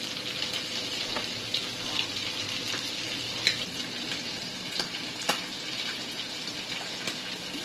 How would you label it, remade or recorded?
recorded